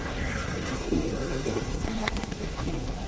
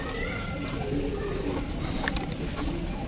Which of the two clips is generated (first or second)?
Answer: first